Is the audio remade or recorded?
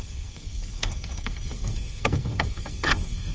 remade